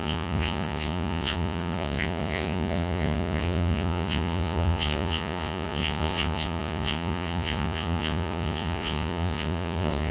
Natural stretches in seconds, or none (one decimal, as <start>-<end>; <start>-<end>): none